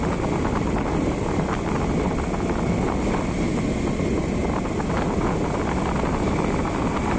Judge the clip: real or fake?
real